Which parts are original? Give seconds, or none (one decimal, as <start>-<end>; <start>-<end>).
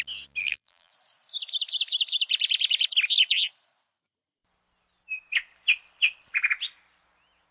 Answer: 0.0-0.4; 0.9-7.5